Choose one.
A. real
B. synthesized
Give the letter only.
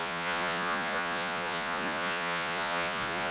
B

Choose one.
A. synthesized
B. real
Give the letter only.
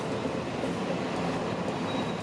B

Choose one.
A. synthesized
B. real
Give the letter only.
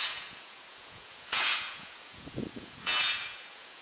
A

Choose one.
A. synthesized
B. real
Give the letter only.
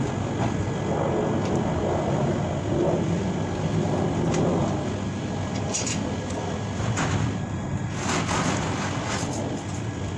B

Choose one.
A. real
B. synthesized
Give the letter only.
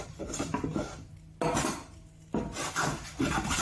A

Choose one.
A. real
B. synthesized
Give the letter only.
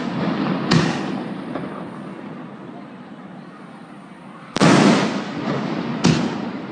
A